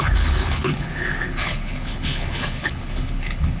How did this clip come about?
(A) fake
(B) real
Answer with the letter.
A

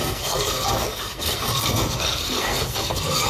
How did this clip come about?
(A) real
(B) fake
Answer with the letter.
B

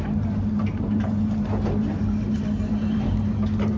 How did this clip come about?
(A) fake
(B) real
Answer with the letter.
B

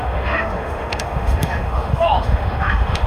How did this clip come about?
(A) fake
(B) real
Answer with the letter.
A